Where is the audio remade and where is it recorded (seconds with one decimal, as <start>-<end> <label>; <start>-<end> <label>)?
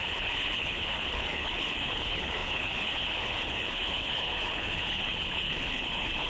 0.0-6.3 remade